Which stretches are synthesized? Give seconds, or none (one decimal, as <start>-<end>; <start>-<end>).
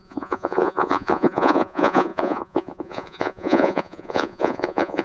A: 0.0-5.0